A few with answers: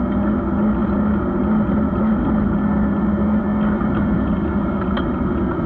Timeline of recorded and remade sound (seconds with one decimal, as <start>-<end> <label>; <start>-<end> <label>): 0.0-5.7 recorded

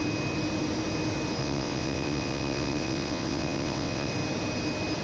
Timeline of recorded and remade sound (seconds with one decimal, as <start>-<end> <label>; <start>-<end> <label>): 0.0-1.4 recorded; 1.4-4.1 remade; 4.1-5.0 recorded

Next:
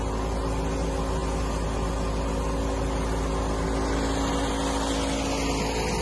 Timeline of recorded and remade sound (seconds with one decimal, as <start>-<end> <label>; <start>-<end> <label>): 0.0-6.0 recorded

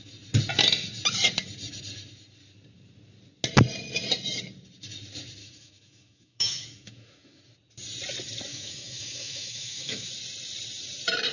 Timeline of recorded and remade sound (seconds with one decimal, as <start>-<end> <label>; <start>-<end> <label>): 0.0-5.4 recorded; 5.4-7.4 remade; 7.4-8.5 recorded; 8.5-10.1 remade; 10.1-11.3 recorded

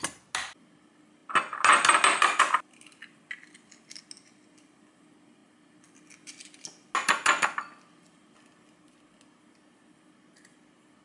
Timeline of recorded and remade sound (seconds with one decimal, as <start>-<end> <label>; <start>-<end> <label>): 0.0-11.0 recorded

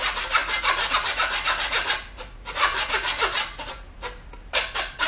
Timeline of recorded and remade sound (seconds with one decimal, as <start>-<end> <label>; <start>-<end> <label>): 0.0-5.1 recorded